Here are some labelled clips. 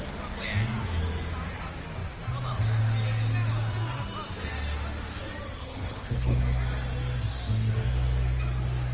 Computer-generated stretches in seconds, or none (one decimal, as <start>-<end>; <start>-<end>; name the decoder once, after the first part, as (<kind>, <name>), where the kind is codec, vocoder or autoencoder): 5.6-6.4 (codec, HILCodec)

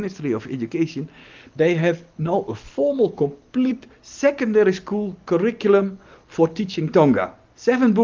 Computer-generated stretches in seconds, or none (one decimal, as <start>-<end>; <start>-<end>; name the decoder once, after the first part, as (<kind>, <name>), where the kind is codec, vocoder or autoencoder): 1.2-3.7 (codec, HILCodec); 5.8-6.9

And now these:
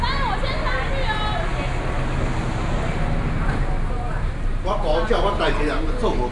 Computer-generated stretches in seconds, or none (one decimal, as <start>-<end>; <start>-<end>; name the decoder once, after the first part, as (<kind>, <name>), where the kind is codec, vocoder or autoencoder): none